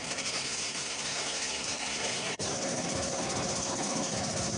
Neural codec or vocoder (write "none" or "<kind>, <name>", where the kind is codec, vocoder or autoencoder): codec, SNAC